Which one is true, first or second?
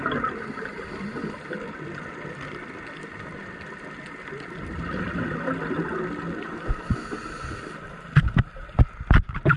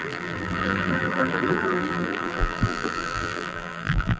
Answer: first